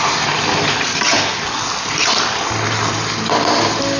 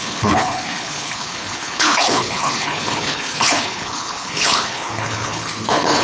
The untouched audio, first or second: first